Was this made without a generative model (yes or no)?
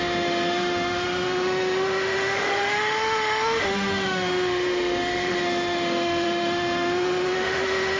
no